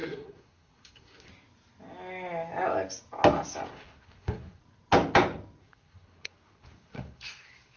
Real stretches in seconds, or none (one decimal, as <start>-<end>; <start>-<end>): 1.3-3.7; 4.6-5.6